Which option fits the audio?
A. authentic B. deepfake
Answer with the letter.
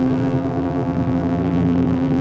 B